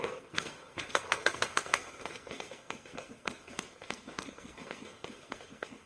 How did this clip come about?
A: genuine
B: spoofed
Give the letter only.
B